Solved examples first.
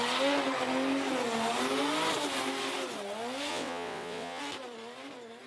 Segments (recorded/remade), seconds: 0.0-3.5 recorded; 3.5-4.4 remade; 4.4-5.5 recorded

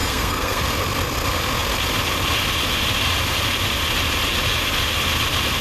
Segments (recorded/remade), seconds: 0.0-0.6 remade; 0.6-5.6 recorded

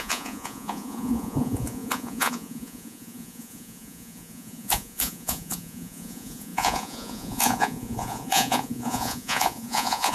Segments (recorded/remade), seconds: 0.0-10.1 remade

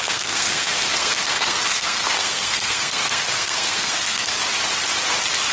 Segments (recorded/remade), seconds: 0.0-4.3 remade; 4.3-5.5 recorded

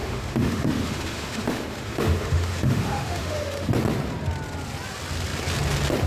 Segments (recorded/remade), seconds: 0.0-3.7 remade; 3.7-6.1 recorded

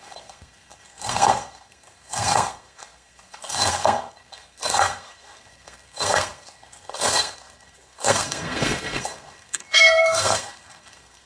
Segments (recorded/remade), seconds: 0.0-11.3 remade

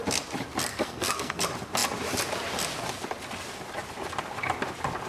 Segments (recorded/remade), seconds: 0.0-0.7 recorded; 0.7-1.4 remade; 1.4-5.1 recorded

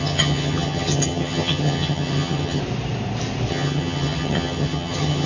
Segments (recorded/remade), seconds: 0.0-2.6 remade; 2.6-3.5 recorded; 3.5-5.3 remade